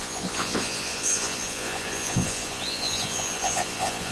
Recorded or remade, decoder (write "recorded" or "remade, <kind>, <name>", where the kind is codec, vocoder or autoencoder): remade, vocoder, Vocos